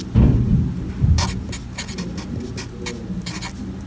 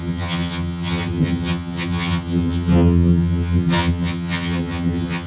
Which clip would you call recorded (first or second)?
first